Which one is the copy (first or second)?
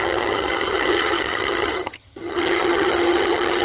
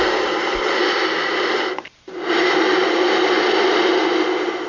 first